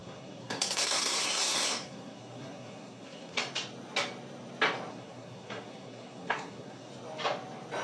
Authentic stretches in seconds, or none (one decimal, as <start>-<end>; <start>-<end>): 3.4-4.9; 6.9-7.8